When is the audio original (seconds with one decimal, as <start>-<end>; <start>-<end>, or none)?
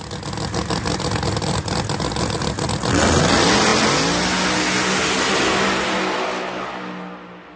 0.0-7.6